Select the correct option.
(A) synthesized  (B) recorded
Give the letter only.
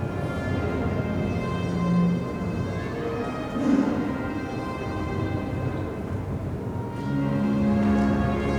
B